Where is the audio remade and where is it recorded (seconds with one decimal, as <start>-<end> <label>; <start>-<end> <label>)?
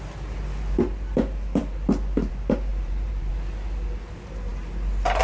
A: 0.0-2.7 recorded; 2.7-3.3 remade; 3.3-5.2 recorded